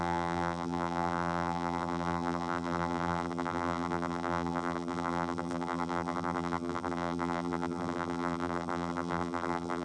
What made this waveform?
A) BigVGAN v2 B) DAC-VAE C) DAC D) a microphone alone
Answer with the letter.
A